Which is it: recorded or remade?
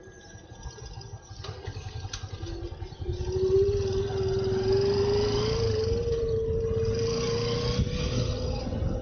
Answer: recorded